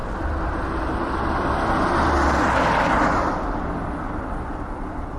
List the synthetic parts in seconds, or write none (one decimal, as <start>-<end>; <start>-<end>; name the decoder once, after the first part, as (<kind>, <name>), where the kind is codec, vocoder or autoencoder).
none